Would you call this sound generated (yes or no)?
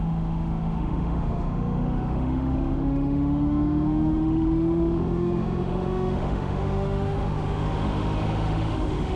yes